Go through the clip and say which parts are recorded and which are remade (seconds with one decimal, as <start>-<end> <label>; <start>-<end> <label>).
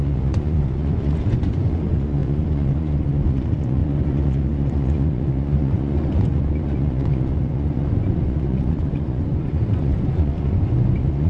0.0-11.3 remade